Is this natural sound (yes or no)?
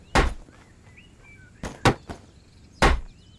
yes